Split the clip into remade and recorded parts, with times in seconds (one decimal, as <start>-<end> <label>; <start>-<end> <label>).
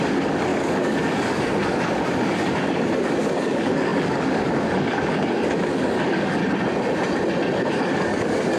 0.0-6.4 remade; 6.4-7.7 recorded; 7.7-8.6 remade